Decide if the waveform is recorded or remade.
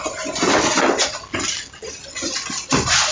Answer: recorded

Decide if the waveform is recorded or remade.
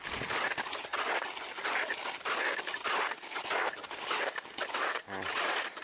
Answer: recorded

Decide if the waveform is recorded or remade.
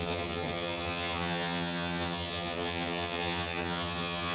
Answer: remade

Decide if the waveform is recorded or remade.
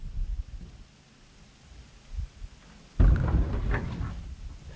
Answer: recorded